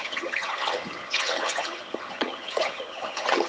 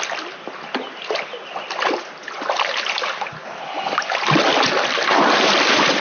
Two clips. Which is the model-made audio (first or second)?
first